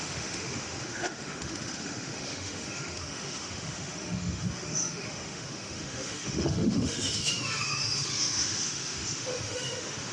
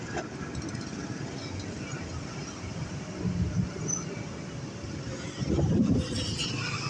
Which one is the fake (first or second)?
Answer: first